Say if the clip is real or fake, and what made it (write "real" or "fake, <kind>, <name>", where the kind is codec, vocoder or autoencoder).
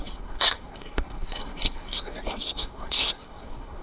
fake, codec, SNAC